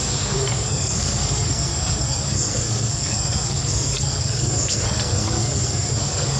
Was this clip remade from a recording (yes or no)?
yes